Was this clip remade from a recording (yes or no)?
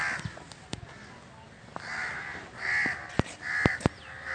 no